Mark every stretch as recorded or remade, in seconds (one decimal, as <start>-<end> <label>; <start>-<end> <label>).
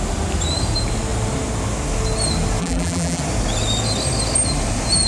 0.0-2.6 recorded; 2.6-3.2 remade; 3.2-5.1 recorded